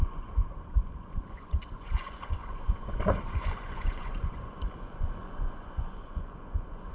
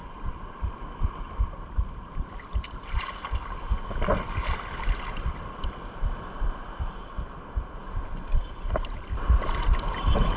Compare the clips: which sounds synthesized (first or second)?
first